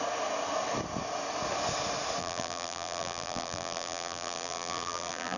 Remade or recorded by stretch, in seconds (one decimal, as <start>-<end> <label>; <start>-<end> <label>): 0.0-2.2 recorded; 2.2-5.4 remade